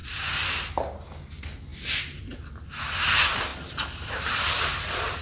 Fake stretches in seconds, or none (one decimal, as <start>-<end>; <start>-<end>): none